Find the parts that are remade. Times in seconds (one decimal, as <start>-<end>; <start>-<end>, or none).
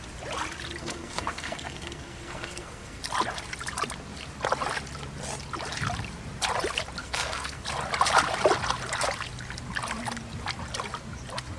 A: 0.8-3.0; 7.0-7.6